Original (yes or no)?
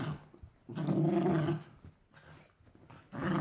yes